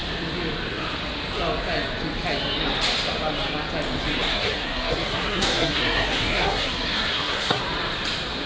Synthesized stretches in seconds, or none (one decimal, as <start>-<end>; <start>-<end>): 4.3-7.6